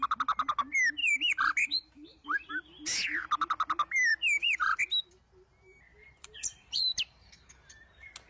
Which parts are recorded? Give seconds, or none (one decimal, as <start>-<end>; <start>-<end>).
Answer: 0.0-1.0; 2.5-4.1; 4.8-5.9; 7.5-8.3